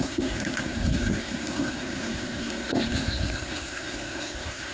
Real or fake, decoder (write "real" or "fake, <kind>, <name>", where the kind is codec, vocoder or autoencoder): fake, codec, SNAC